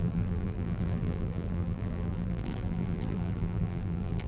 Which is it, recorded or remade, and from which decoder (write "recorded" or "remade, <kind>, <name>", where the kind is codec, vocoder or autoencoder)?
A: remade, vocoder, BigVGAN v2